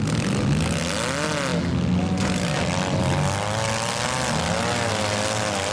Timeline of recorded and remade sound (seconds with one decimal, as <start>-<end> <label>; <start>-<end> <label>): 0.0-5.7 recorded